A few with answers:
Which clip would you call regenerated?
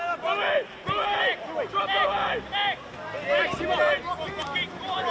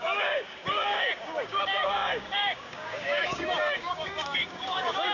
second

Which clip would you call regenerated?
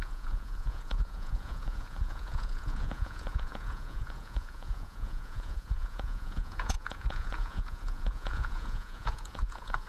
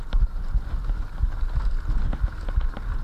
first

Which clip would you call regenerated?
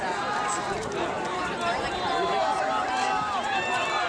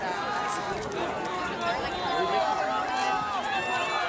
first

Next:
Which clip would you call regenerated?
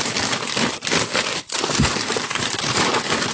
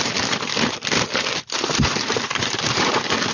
first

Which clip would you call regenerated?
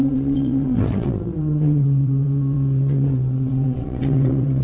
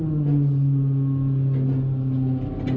first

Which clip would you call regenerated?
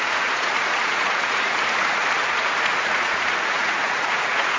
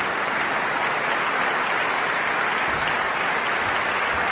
first